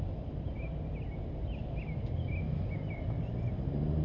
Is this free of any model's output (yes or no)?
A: yes